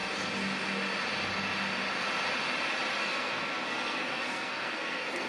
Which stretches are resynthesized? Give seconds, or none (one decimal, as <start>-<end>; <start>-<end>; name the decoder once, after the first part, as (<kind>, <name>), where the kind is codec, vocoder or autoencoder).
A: 3.0-5.3 (codec, SNAC)